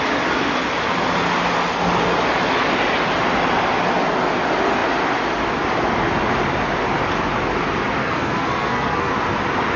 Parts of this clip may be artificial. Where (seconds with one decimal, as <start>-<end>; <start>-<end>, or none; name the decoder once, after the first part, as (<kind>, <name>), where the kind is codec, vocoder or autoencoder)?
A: 8.0-9.1 (codec, SNAC)